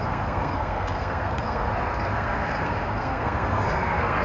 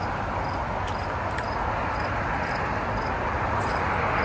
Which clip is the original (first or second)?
second